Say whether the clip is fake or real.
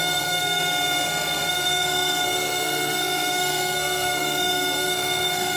fake